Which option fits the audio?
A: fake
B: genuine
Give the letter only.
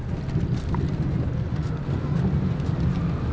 B